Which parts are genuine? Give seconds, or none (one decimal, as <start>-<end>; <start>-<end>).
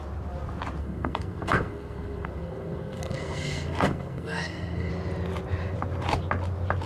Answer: 0.0-0.8; 4.9-6.9